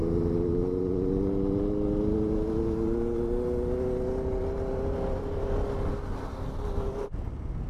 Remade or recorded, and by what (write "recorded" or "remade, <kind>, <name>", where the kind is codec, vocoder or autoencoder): recorded